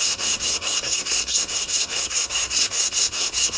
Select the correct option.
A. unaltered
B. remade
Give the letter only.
B